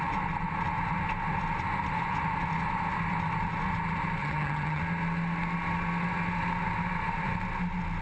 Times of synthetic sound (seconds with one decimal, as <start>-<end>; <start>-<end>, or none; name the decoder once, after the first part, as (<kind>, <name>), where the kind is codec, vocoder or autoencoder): 4.2-4.8 (vocoder, HiFi-GAN)